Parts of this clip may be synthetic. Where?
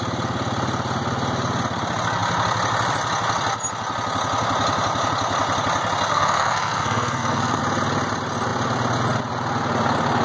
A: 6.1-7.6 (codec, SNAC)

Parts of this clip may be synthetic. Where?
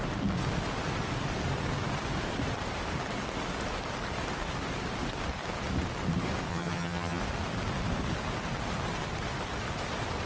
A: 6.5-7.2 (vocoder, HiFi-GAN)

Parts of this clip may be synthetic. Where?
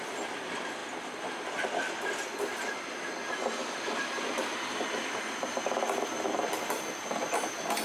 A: none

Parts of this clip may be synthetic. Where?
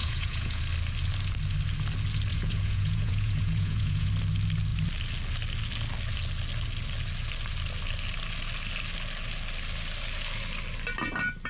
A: 0.0-0.6 (vocoder, Vocos); 2.3-4.1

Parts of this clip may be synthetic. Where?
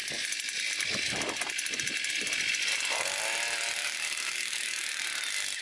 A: 3.8-5.0 (codec, DAC)